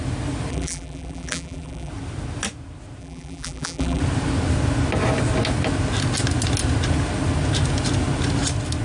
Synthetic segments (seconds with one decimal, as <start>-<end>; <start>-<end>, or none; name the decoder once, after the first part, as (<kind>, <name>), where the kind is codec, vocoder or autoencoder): 0.5-1.9 (vocoder, BigVGAN v2); 3.0-4.0